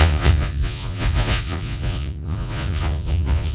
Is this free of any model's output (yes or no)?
no